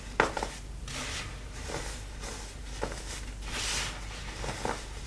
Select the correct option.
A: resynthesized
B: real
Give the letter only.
B